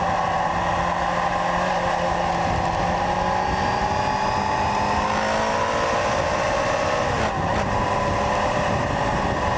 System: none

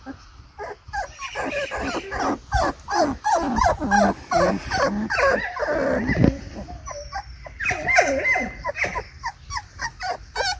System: none